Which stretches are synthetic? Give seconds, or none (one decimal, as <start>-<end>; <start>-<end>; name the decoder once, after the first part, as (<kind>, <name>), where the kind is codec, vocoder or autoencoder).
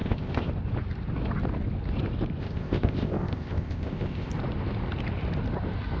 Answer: 0.0-0.5 (codec, ZipCodec); 2.4-4.3